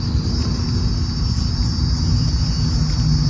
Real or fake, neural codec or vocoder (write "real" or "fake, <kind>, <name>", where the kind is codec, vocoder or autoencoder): real